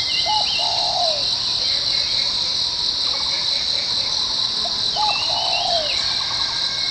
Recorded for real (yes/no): yes